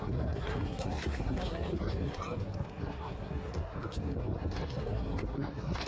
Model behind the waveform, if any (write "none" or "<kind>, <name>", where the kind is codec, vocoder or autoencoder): codec, SNAC